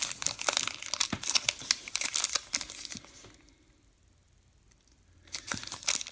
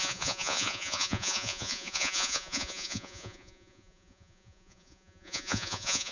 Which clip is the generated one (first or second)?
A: second